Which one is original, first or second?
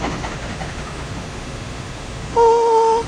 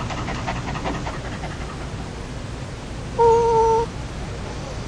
second